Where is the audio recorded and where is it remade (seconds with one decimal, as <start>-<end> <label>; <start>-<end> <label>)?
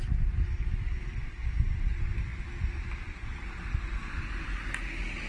0.0-5.3 recorded